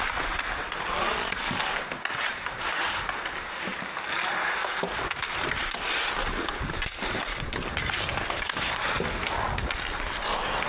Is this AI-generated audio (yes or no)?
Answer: no